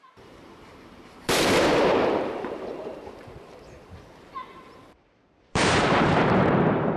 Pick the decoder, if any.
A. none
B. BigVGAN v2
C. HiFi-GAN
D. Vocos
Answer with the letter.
B